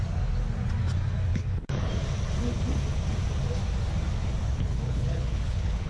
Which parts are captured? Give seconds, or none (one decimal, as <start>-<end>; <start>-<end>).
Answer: 0.0-1.3; 1.9-4.4